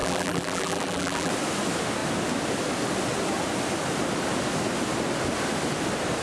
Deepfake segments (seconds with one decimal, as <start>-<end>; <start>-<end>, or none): 0.0-1.3